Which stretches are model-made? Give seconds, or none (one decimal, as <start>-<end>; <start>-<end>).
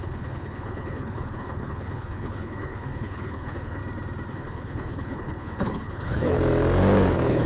0.0-3.8; 4.3-6.4; 7.1-7.5